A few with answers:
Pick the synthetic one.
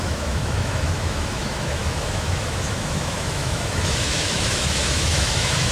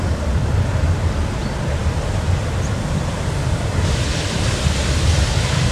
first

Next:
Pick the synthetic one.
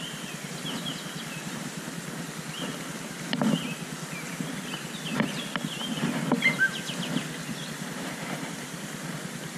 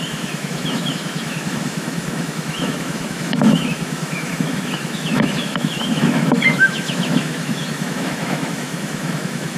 second